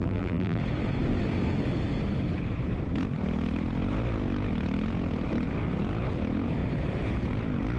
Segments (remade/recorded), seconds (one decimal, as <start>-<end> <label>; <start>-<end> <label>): 0.0-0.6 remade; 0.6-7.8 recorded